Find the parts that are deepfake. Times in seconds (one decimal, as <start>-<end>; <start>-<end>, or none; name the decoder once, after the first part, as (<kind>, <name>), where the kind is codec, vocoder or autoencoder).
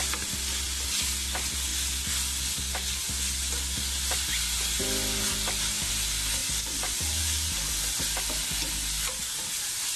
6.4-7.7 (vocoder, BigVGAN v2)